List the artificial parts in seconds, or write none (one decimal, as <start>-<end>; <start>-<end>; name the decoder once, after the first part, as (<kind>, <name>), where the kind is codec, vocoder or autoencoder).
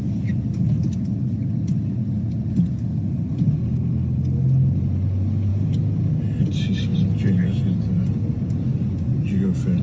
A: none